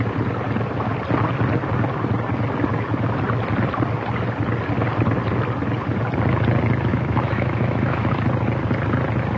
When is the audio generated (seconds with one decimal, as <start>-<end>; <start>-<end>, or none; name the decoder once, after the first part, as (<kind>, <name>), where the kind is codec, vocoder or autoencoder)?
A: 6.9-8.1 (autoencoder, DAC-VAE)